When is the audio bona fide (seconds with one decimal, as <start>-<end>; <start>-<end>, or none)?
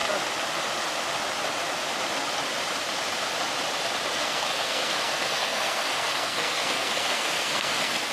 0.0-4.1